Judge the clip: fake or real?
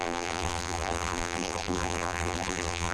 fake